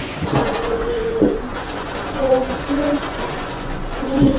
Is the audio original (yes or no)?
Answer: no